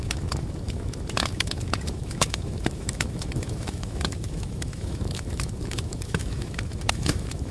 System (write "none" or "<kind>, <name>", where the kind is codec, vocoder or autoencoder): autoencoder, DAC-VAE